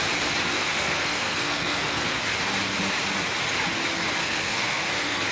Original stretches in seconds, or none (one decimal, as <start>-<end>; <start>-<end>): 0.0-0.5; 2.2-4.2